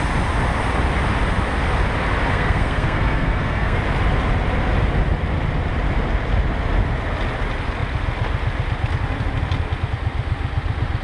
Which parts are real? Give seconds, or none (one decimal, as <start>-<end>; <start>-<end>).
0.0-2.3; 3.8-11.0